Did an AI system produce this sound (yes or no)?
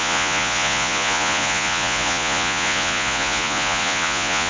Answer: yes